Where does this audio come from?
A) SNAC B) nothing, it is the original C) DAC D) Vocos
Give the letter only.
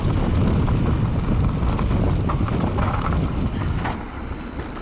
B